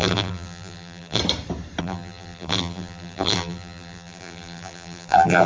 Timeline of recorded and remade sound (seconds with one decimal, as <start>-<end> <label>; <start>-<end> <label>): 0.0-1.2 remade; 1.2-1.8 recorded; 1.8-5.5 remade